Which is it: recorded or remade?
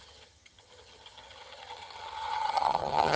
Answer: remade